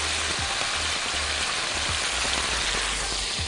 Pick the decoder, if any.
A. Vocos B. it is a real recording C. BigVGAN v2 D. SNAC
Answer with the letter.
B